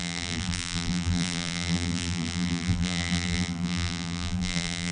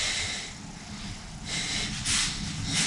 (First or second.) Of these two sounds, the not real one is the first